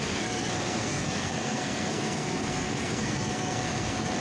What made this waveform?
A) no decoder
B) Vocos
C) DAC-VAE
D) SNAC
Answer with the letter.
D